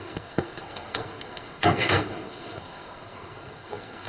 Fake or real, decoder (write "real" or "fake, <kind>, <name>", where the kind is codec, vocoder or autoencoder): fake, codec, SNAC